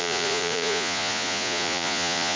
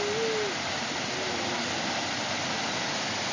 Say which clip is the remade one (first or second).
first